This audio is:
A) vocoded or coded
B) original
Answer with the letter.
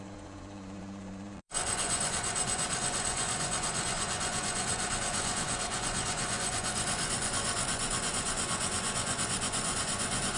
A